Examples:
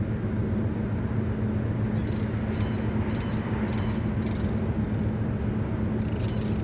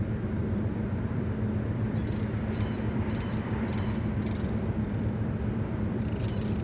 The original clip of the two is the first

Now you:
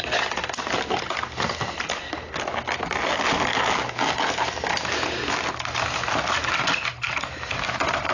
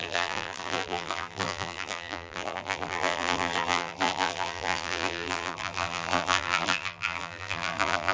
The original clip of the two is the first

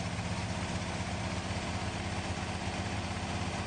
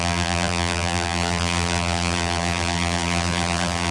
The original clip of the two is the first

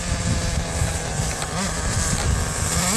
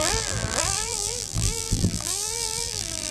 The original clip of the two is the first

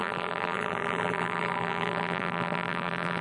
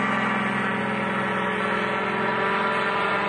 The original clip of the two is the second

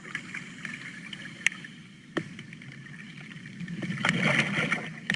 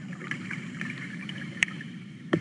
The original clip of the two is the first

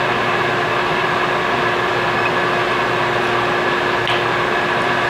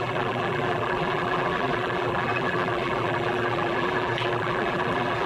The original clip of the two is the first